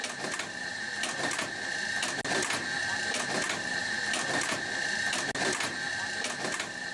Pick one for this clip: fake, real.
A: real